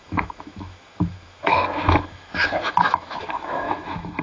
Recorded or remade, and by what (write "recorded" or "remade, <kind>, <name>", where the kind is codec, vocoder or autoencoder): remade, autoencoder, DAC-VAE